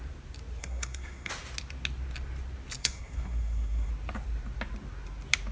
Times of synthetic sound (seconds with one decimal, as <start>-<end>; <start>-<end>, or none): 0.6-1.3; 2.8-3.9